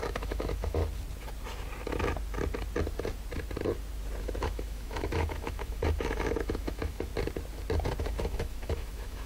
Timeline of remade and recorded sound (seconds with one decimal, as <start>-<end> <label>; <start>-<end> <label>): 0.0-0.8 remade; 0.8-4.2 recorded; 4.2-7.1 remade; 7.1-8.0 recorded; 8.0-9.3 remade